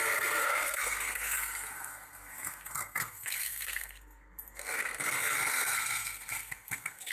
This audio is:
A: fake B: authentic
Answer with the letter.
A